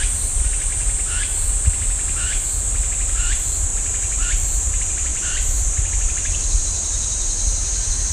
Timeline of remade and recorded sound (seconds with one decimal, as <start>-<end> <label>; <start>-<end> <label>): 0.0-0.7 remade; 0.7-3.1 recorded; 3.1-8.1 remade